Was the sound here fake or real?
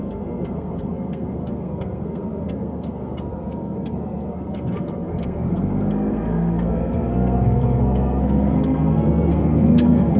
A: fake